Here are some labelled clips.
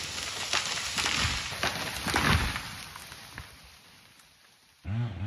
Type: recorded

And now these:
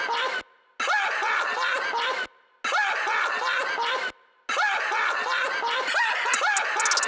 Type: recorded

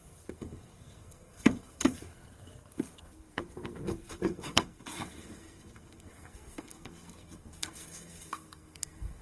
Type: remade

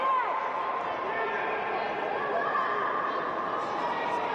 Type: recorded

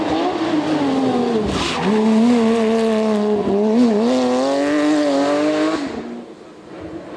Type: recorded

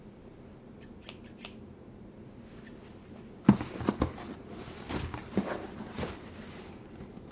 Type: recorded